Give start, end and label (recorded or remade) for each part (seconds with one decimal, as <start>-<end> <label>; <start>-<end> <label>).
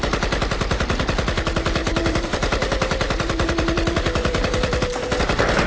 0.0-1.8 recorded; 1.8-5.2 remade; 5.2-5.7 recorded